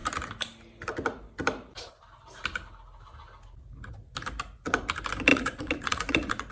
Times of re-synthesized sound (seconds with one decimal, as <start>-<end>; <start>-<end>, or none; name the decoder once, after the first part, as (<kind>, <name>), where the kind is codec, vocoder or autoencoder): 5.3-6.5 (vocoder, Vocos)